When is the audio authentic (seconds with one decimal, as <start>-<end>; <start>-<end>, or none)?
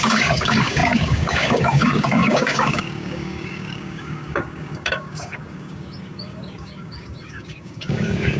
none